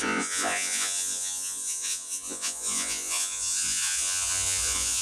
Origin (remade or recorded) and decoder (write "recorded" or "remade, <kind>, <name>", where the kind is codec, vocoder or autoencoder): remade, vocoder, Vocos